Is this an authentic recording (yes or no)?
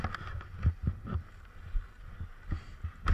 yes